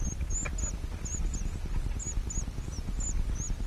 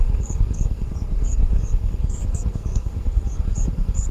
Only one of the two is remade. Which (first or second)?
second